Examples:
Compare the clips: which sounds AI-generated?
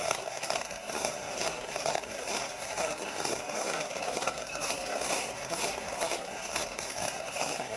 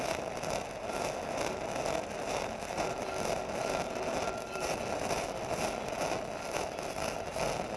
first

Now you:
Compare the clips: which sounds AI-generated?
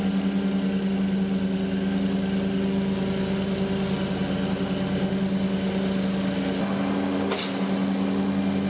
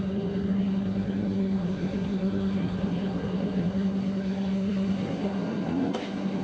second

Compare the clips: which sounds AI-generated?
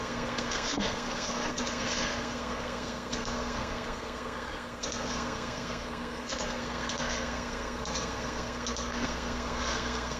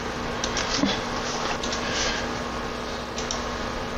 first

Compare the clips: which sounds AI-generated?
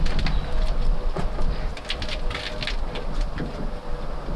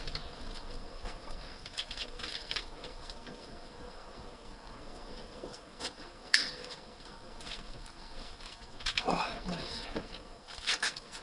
second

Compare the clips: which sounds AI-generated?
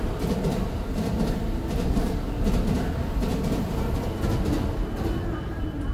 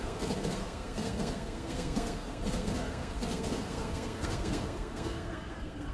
second